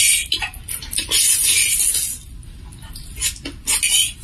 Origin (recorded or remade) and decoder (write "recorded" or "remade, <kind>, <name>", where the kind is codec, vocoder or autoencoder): recorded